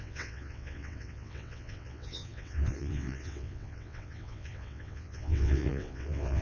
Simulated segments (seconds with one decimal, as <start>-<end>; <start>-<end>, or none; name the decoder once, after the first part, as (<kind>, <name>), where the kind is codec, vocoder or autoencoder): 0.0-6.4 (vocoder, WaveNeXt)